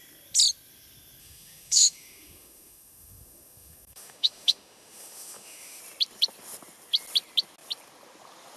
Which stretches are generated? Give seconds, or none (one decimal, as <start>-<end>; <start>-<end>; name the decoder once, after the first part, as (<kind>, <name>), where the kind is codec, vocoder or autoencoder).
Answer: 1.2-5.8 (autoencoder, DAC-VAE)